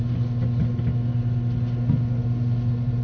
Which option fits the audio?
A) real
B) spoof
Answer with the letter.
A